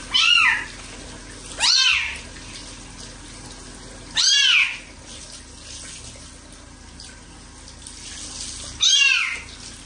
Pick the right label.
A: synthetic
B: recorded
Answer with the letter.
B